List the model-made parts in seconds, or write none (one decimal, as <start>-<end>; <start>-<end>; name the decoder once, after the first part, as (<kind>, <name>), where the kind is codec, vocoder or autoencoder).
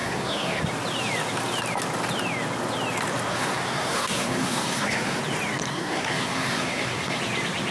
0.0-0.6 (codec, SNAC); 3.3-5.2; 5.7-7.2